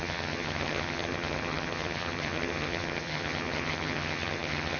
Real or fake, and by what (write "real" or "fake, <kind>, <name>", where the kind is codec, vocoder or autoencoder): fake, vocoder, HiFi-GAN